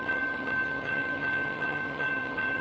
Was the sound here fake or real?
fake